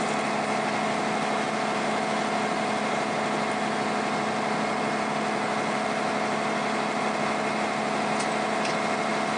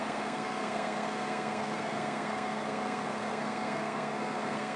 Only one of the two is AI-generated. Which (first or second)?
second